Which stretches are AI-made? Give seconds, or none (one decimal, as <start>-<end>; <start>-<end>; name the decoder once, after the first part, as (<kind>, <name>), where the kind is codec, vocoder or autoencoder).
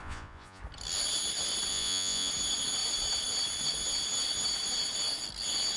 0.0-0.6 (vocoder, Vocos); 1.7-2.3